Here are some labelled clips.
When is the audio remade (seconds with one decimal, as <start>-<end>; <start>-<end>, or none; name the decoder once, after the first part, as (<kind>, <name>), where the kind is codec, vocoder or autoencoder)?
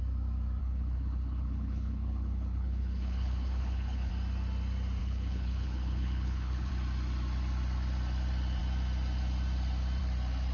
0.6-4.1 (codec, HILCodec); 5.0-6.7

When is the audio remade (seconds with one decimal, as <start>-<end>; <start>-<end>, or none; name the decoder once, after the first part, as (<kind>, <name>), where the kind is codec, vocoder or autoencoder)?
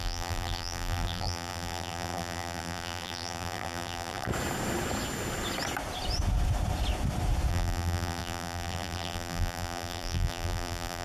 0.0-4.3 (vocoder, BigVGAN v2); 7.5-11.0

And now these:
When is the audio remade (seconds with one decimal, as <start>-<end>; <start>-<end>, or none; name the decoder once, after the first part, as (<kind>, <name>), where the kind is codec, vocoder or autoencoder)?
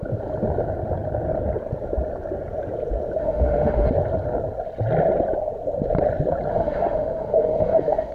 3.2-3.9 (autoencoder, DAC-VAE); 6.5-8.1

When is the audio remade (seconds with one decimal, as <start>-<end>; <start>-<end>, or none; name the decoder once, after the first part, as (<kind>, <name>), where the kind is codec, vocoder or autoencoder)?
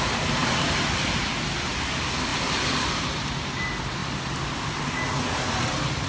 0.4-1.1 (vocoder, BigVGAN v2); 2.3-2.9; 4.0-4.8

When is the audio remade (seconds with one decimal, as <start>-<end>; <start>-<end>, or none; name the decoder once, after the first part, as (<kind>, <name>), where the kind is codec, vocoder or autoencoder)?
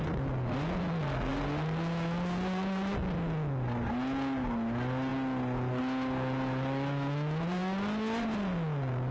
none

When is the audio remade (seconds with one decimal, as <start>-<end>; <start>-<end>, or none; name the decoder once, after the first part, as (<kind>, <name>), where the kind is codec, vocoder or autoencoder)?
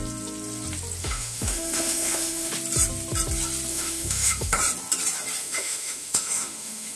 1.0-2.5 (autoencoder, DAC-VAE); 3.7-4.6; 5.4-7.0